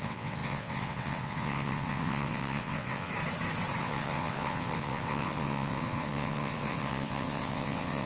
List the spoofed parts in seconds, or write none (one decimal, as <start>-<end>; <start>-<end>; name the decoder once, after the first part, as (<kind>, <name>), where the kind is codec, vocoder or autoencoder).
0.0-3.1 (vocoder, WaveNeXt); 3.8-8.1